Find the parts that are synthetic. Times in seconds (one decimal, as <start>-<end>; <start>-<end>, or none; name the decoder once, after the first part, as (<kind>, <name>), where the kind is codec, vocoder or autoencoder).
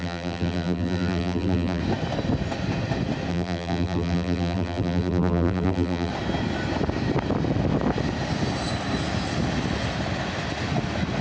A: 0.0-1.8 (vocoder, BigVGAN v2); 3.3-6.1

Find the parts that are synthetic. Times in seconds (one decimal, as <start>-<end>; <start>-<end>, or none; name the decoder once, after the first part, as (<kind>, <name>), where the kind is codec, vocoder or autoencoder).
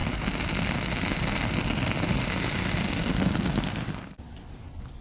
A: 3.0-5.0 (vocoder, BigVGAN v2)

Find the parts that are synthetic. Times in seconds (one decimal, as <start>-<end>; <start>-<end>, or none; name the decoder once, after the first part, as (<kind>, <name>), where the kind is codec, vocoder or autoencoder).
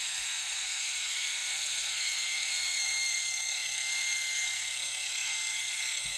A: 0.0-6.2 (codec, SNAC)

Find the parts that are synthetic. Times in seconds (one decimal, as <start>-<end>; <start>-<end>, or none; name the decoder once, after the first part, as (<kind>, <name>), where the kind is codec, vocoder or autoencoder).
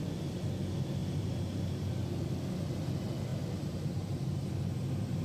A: 1.0-1.9 (vocoder, BigVGAN v2); 3.3-4.5